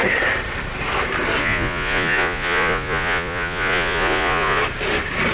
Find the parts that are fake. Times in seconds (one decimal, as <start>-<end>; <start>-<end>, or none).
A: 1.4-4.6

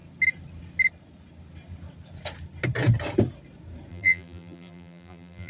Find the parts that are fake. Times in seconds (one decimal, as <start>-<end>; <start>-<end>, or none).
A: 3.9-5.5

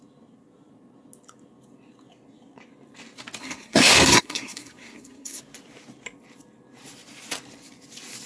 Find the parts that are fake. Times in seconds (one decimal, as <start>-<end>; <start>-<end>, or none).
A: 3.4-5.4

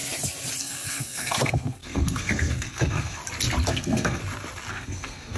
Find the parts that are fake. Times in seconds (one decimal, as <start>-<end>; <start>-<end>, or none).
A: 0.6-3.2; 3.7-4.2; 4.7-5.4

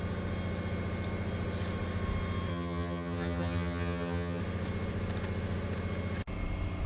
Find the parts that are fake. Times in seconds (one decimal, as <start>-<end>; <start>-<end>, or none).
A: 2.5-4.4